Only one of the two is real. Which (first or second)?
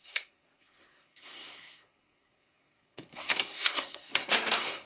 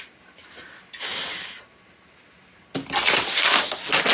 second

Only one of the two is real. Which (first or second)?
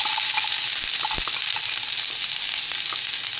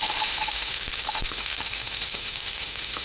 first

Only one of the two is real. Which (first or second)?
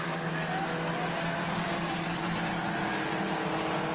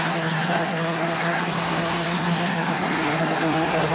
first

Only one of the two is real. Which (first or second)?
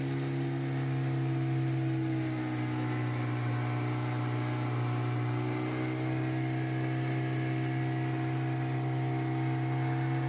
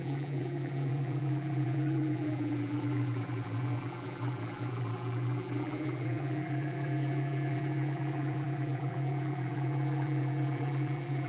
first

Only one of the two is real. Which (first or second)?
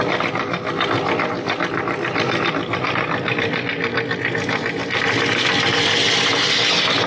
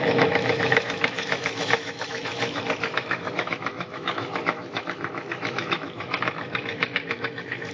first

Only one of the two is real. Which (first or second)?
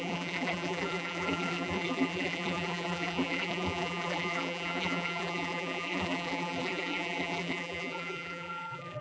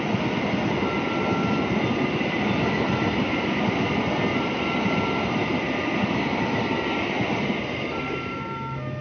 second